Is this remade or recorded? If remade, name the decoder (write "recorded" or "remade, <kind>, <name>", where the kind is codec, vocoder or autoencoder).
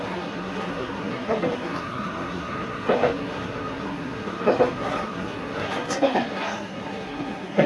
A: remade, codec, SNAC